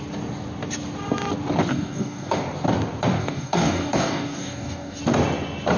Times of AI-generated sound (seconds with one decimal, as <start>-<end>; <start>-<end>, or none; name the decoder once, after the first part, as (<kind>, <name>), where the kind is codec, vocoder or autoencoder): 1.7-2.4 (codec, DAC); 3.2-5.0